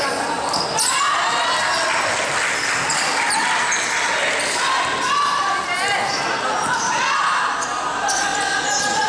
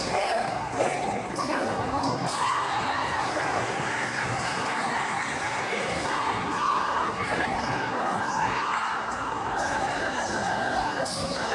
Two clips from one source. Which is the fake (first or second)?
second